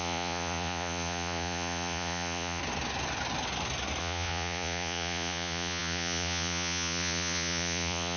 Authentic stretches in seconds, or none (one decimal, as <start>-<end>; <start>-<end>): 2.6-4.0

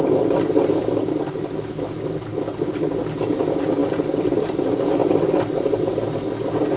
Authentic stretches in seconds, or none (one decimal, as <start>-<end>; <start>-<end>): 0.0-6.8

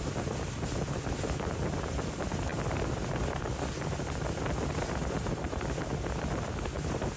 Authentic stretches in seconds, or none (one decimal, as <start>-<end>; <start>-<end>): 0.0-7.2